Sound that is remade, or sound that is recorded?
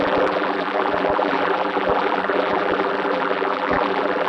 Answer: remade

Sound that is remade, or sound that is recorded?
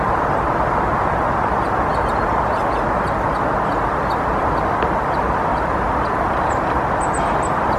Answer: recorded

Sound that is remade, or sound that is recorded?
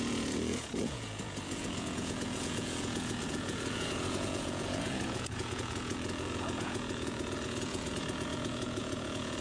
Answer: remade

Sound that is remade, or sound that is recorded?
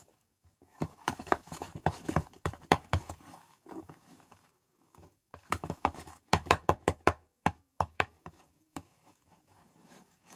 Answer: remade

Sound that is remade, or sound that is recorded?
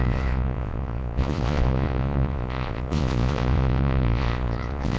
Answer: remade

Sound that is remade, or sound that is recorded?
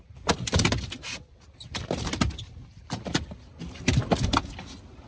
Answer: recorded